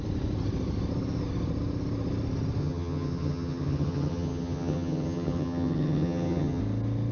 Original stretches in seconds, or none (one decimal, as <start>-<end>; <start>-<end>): 0.0-2.6; 6.6-7.1

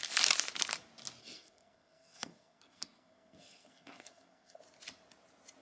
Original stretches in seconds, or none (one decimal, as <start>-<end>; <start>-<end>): 0.0-1.2; 4.6-5.6